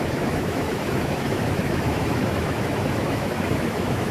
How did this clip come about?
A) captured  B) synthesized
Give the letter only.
B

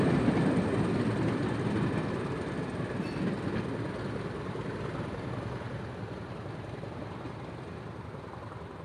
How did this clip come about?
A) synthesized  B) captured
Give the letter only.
B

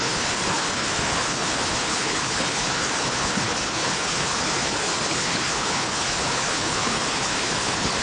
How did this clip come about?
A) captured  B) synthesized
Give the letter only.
B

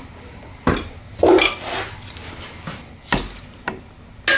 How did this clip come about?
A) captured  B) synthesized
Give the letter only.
A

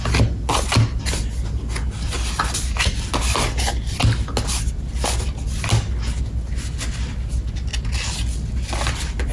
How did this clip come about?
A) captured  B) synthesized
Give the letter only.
A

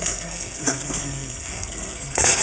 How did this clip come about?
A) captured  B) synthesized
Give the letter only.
B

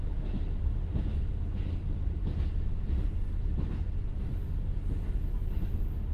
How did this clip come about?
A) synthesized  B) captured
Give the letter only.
B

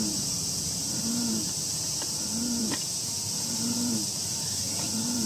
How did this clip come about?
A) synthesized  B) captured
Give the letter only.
A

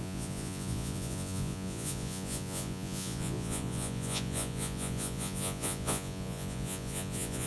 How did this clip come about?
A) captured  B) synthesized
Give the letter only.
B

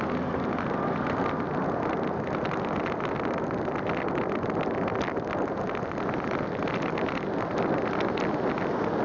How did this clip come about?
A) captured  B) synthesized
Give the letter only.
A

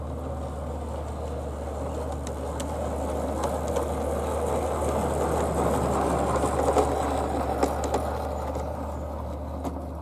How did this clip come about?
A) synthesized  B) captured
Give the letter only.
B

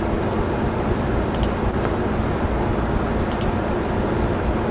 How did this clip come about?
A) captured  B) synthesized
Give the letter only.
A